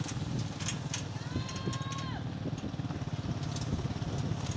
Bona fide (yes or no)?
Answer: yes